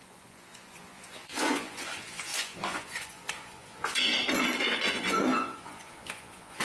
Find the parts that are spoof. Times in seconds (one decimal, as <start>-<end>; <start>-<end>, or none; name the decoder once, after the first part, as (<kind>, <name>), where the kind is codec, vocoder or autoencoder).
0.0-4.1 (vocoder, Vocos); 4.7-6.6